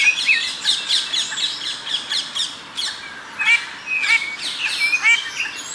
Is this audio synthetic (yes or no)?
no